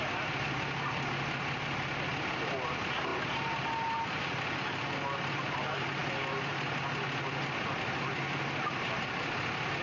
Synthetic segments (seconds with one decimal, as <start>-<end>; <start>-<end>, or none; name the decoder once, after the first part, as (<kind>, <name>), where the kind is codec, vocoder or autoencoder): none